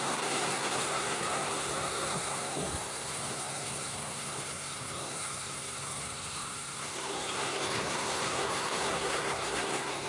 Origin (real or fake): fake